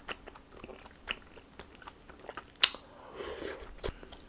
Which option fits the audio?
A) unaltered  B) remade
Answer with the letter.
A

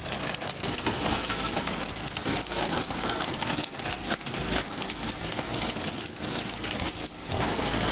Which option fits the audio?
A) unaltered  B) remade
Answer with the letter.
B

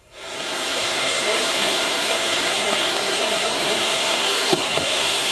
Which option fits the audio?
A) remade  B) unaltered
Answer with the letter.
A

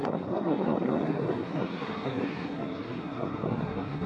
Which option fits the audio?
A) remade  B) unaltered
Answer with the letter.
A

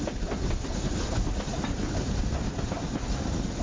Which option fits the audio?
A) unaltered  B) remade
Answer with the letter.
A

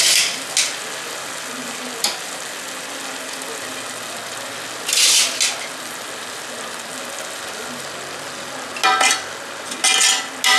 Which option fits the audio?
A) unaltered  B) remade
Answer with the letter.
A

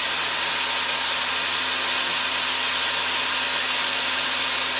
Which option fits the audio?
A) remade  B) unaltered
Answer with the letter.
B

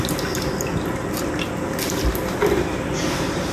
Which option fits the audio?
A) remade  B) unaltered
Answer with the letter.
B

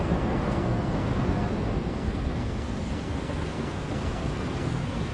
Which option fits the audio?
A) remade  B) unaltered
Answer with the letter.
A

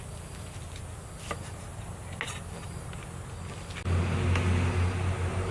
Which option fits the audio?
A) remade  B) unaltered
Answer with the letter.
B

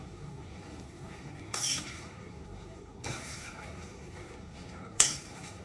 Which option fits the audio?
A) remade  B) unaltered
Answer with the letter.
A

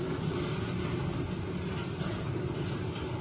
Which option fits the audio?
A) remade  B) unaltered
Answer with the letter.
B